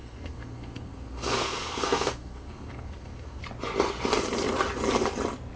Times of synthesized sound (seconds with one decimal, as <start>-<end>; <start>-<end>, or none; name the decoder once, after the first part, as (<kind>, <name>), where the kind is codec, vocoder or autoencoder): 0.0-3.4 (codec, SNAC)